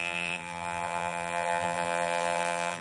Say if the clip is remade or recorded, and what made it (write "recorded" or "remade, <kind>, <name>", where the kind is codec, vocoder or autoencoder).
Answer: remade, vocoder, BigVGAN v2